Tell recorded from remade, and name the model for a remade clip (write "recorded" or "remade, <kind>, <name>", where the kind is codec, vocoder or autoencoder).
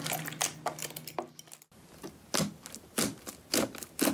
recorded